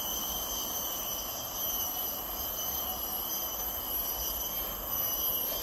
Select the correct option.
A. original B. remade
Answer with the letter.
A